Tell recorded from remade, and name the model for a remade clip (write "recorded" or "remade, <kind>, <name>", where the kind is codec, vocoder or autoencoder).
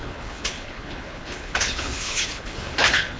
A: remade, codec, HILCodec